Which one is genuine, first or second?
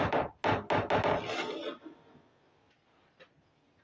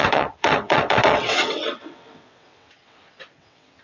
first